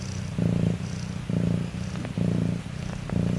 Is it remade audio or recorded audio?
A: recorded